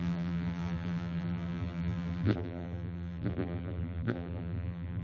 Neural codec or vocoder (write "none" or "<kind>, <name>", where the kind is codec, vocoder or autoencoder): vocoder, BigVGAN v2